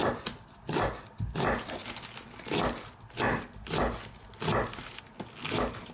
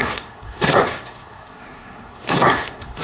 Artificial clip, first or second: second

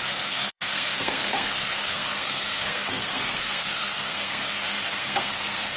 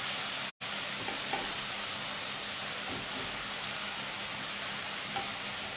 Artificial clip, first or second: first